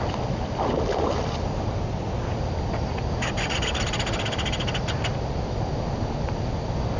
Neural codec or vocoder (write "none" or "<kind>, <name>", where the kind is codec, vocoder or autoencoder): none